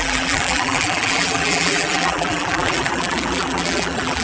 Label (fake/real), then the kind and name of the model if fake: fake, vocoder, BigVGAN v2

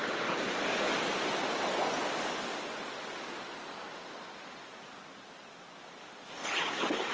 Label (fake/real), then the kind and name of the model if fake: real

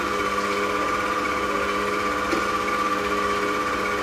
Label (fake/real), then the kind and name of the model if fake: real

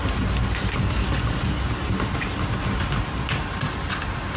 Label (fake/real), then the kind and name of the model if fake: real